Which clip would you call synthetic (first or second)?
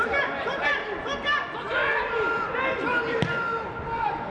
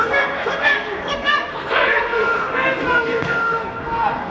second